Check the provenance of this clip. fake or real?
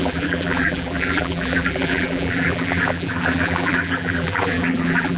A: fake